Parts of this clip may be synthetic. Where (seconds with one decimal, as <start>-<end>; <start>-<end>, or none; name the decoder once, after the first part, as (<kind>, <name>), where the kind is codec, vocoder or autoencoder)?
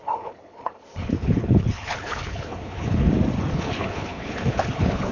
0.0-3.1 (codec, HILCodec); 3.5-5.1